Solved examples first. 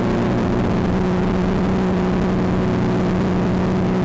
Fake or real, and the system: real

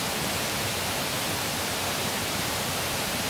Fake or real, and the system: fake, vocoder, BigVGAN v2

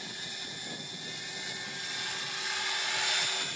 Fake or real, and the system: real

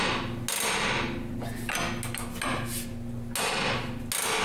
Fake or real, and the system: real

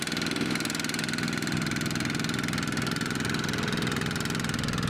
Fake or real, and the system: real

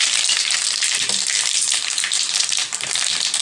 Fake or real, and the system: fake, vocoder, BigVGAN v2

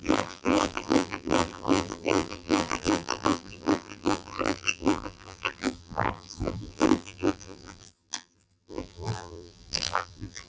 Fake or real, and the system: fake, vocoder, BigVGAN v2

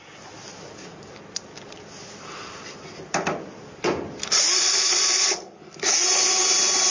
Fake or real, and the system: real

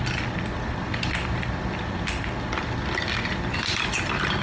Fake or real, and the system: real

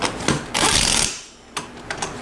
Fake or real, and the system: fake, vocoder, BigVGAN v2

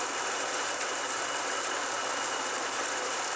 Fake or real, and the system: fake, vocoder, BigVGAN v2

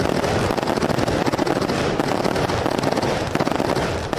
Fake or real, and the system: real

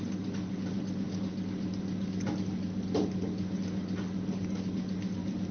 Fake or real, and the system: real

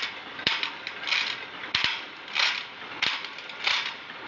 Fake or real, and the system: fake, vocoder, BigVGAN v2